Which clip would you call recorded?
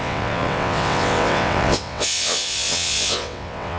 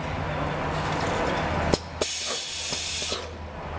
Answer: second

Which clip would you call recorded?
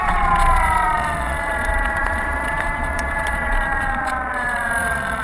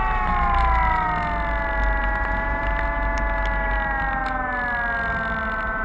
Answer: second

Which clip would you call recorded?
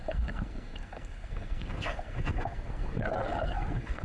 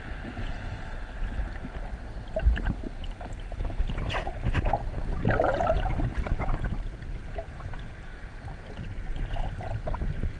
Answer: second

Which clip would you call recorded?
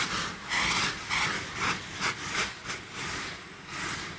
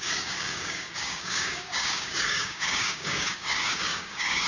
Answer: first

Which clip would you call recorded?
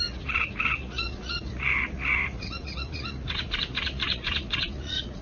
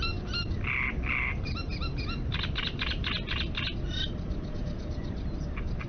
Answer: second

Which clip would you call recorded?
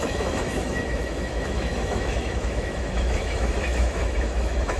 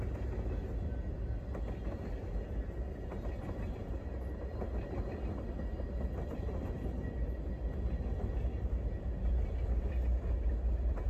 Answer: second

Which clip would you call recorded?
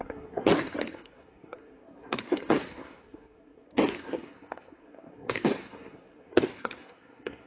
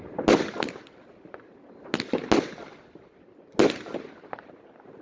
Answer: second